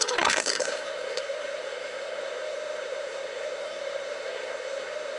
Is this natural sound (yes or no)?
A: no